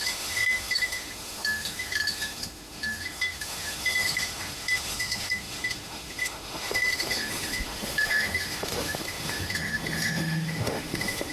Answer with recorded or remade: remade